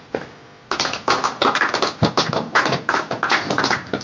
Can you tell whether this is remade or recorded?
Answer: recorded